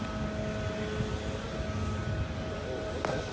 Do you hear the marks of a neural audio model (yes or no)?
no